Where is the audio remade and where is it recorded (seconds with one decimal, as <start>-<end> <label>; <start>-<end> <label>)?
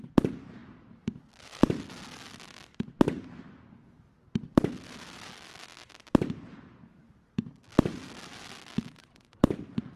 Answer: 0.0-10.0 recorded